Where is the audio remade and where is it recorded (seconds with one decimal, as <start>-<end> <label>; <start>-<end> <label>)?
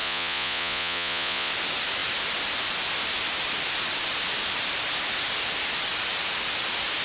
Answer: 0.0-1.5 remade; 1.5-7.0 recorded